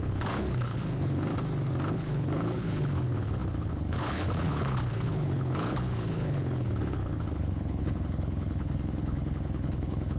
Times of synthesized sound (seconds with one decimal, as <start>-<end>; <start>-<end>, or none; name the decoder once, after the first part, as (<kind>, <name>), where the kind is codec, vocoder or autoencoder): 0.0-1.3 (codec, HILCodec); 1.9-10.2